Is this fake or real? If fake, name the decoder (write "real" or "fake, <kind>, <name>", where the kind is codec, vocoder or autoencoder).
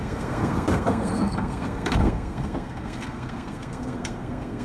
fake, codec, SNAC